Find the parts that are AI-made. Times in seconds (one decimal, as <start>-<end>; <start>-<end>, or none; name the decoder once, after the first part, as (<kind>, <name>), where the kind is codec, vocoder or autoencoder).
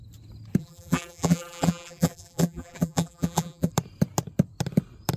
0.6-3.7 (vocoder, BigVGAN v2)